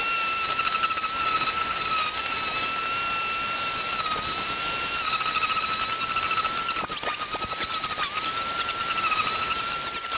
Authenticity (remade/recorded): recorded